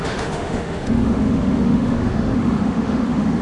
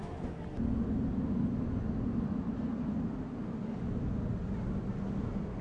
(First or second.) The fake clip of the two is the first